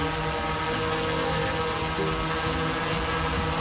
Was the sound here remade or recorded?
recorded